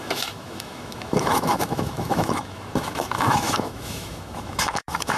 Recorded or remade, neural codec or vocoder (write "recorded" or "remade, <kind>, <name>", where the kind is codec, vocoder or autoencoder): remade, autoencoder, DAC-VAE